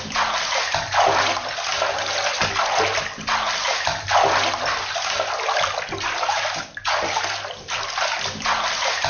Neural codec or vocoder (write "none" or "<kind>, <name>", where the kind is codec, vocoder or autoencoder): none